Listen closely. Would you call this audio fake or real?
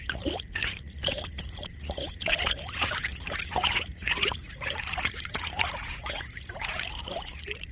fake